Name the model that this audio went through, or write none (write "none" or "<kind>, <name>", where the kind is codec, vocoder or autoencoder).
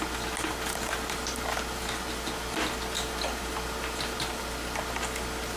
none